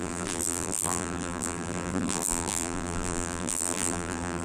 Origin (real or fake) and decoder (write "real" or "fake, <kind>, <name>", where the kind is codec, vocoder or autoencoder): fake, vocoder, BigVGAN v2